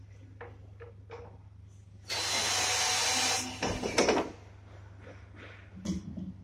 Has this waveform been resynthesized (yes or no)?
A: no